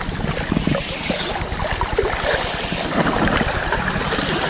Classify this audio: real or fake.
real